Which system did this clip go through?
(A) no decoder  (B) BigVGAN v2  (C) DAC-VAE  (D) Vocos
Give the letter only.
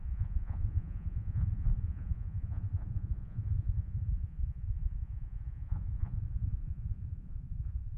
D